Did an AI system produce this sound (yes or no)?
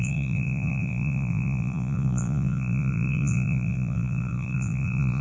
yes